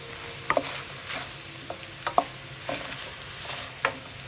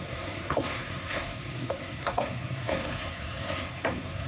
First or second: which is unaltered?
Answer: first